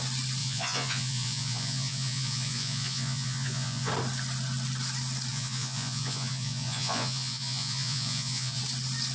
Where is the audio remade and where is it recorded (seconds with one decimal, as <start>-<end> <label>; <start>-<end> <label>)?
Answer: 0.0-0.4 recorded; 0.4-3.9 remade; 3.9-5.3 recorded; 5.3-8.6 remade; 8.6-9.1 recorded